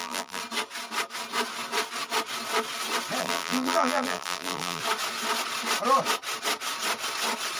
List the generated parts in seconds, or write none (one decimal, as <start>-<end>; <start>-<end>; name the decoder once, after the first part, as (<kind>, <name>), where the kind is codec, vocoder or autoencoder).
0.0-0.4 (vocoder, BigVGAN v2); 3.2-4.8